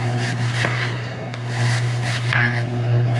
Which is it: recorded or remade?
remade